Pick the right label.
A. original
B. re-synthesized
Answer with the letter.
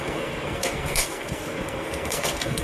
B